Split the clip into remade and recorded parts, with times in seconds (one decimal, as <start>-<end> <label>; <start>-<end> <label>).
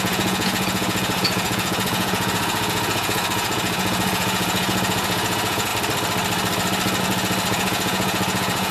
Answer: 0.0-5.7 remade; 5.7-7.0 recorded; 7.0-8.7 remade